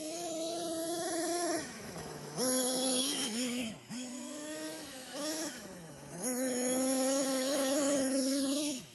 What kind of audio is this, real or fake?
fake